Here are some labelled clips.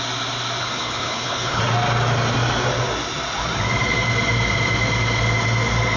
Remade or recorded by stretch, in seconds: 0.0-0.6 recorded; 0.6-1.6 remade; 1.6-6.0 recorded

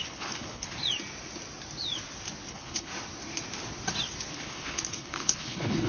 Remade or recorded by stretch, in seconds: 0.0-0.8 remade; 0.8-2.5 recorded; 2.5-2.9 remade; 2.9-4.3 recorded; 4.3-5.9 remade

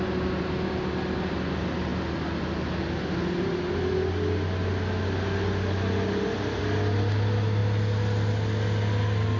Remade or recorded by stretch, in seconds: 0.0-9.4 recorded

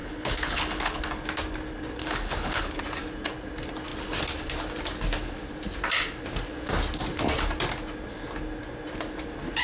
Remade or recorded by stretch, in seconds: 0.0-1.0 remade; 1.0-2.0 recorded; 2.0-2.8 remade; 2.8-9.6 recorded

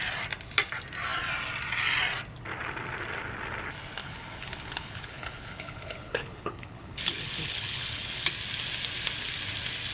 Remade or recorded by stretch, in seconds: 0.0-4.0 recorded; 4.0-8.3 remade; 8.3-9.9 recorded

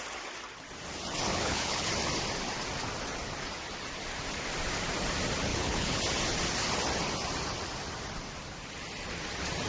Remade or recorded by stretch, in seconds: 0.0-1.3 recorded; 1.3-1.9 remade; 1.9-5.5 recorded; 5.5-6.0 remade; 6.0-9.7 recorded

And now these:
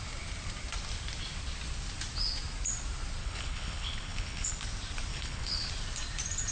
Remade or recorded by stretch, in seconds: 0.0-3.2 recorded; 3.2-4.5 remade; 4.5-5.1 recorded; 5.1-5.7 remade; 5.7-6.5 recorded